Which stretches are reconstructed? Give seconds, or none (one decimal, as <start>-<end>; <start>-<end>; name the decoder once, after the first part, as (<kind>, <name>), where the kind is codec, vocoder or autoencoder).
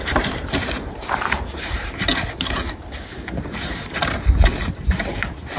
0.0-2.1 (vocoder, BigVGAN v2); 4.6-5.6